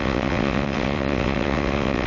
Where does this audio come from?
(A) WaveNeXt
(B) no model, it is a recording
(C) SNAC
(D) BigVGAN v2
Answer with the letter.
A